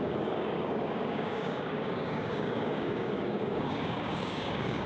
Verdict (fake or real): fake